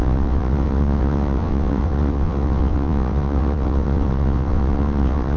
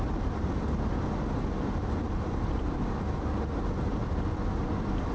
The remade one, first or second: first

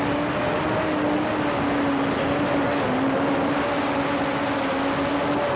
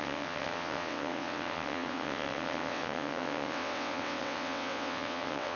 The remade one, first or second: second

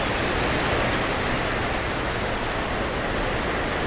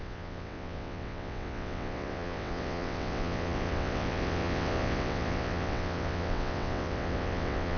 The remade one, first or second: second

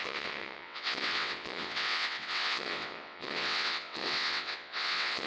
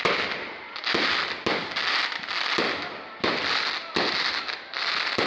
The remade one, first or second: first